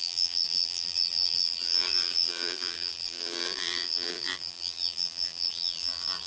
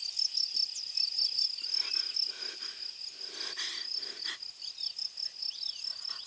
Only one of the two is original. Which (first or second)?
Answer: second